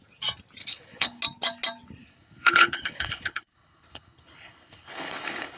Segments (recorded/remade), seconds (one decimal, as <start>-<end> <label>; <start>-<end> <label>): 0.0-0.6 recorded; 0.6-1.2 remade; 1.2-2.0 recorded; 2.0-5.6 remade